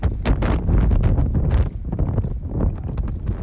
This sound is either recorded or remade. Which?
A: recorded